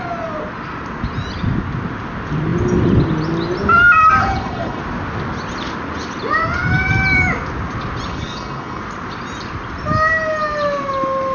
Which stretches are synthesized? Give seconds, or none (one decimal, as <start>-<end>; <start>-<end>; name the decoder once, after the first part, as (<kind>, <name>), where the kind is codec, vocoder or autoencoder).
4.2-4.8 (codec, HILCodec); 8.1-8.8